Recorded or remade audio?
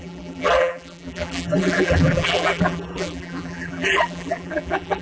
remade